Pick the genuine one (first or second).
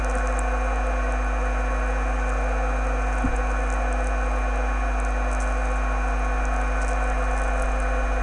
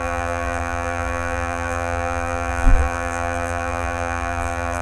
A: first